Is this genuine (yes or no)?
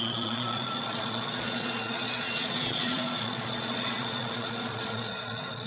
no